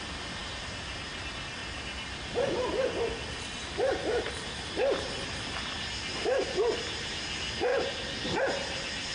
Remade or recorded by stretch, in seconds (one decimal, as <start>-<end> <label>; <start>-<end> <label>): 0.0-0.4 recorded; 0.4-1.2 remade; 1.2-1.6 recorded; 1.6-4.3 remade; 4.3-7.7 recorded; 7.7-9.1 remade